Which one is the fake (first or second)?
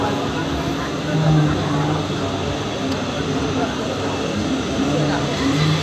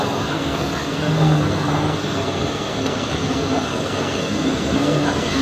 second